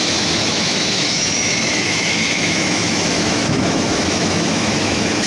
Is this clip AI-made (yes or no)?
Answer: yes